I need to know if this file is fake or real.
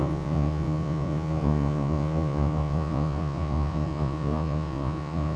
fake